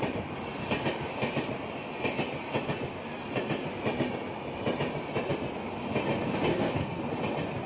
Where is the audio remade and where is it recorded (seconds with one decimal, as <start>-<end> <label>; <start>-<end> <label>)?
0.0-6.5 recorded; 6.5-7.0 remade; 7.0-7.7 recorded